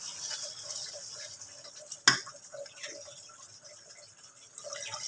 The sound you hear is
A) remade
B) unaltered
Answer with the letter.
B